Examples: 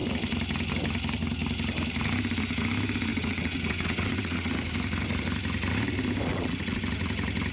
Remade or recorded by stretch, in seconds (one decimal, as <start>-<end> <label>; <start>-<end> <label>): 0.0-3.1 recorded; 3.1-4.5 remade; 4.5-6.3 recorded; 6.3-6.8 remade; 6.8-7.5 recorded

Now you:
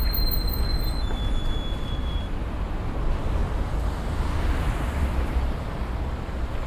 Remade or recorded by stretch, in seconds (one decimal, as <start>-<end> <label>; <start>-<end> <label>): 0.0-6.7 recorded

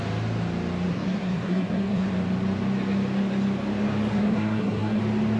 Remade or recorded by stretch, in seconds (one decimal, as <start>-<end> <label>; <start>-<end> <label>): 0.0-0.9 recorded; 0.9-2.1 remade; 2.1-4.1 recorded; 4.1-5.0 remade; 5.0-5.4 recorded

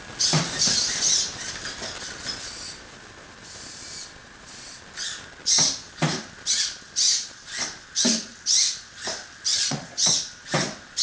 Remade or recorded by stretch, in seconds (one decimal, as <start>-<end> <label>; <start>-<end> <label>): 0.0-4.2 recorded; 4.2-4.8 remade; 4.8-9.5 recorded; 9.5-10.1 remade; 10.1-11.0 recorded

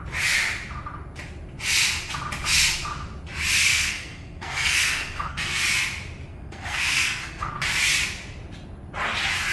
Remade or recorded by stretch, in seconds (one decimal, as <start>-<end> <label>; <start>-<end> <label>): 0.0-3.7 recorded; 3.7-5.6 remade; 5.6-6.3 recorded; 6.3-7.5 remade; 7.5-9.5 recorded